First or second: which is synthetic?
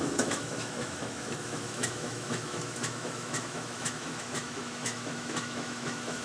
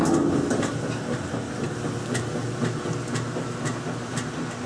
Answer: first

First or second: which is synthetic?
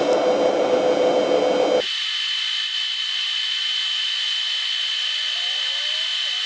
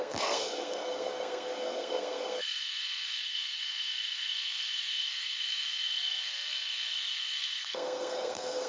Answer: second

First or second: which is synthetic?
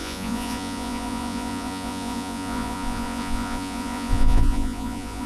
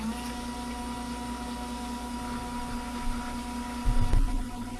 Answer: first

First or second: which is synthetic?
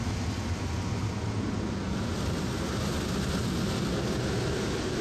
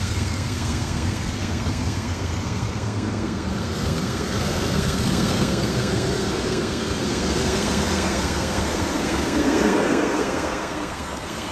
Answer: second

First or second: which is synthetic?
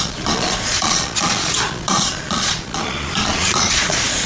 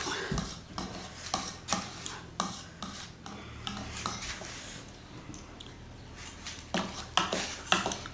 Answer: first